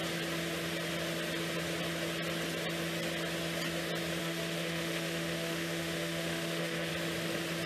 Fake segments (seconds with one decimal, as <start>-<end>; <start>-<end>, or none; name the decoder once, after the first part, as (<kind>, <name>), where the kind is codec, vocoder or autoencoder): 4.2-6.9 (autoencoder, DAC-VAE)